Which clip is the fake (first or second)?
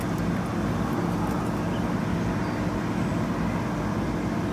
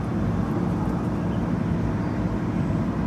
second